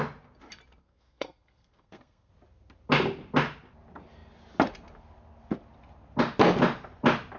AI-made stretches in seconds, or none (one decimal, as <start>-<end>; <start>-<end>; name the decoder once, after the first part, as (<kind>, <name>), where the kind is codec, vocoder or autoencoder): 0.8-2.3 (codec, SNAC)